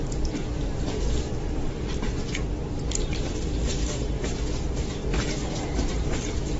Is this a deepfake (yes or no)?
yes